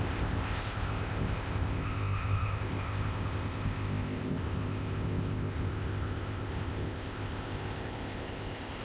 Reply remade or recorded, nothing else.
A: remade